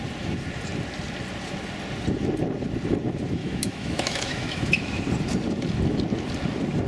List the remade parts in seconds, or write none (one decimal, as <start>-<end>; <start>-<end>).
3.4-5.0

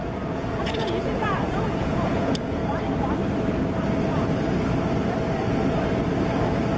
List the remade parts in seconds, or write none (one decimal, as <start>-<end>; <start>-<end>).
0.0-2.6

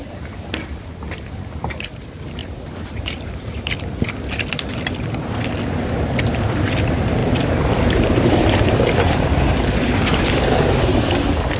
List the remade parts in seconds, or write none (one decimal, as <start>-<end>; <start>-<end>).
2.4-3.7; 7.2-10.3

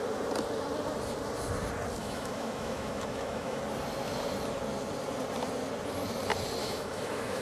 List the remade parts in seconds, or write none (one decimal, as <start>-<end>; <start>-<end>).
2.0-3.6; 6.6-7.4

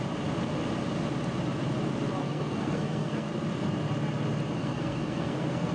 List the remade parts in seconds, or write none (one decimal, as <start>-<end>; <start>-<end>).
2.2-3.3; 4.6-5.7

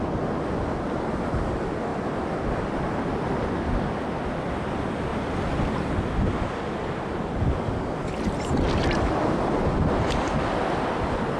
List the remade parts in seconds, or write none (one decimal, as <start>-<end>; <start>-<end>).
none

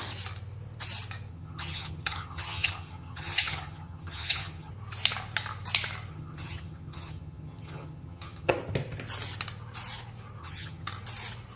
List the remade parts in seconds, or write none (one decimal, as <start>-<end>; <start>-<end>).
1.3-4.7; 6.1-8.5; 10.4-10.9